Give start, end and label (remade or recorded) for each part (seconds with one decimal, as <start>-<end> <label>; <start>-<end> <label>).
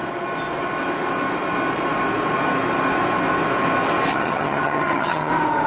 0.0-4.1 recorded; 4.1-5.3 remade; 5.3-5.7 recorded